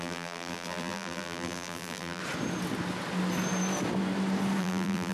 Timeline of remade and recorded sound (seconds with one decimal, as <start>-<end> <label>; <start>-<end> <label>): 0.0-2.2 remade; 2.2-4.6 recorded; 4.6-5.1 remade